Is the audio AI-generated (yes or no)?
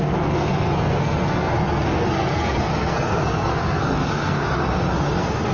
yes